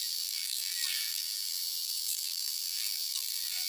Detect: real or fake fake